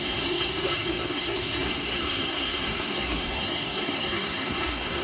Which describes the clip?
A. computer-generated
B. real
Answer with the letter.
A